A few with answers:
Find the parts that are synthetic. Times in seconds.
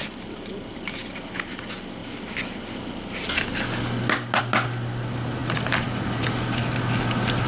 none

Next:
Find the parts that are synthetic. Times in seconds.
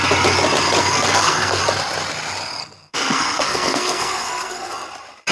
0.8-1.6; 2.6-4.7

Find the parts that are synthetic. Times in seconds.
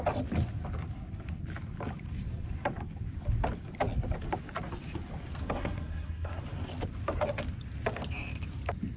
5.4-6.4